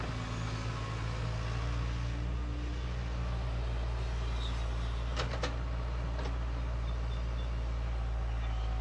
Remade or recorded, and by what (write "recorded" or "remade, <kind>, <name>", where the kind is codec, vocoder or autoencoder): recorded